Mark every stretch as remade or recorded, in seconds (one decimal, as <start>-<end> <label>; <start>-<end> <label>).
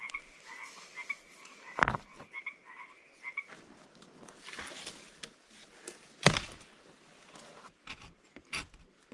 0.0-9.1 recorded